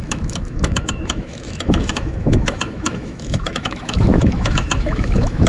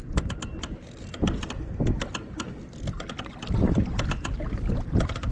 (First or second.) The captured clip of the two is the second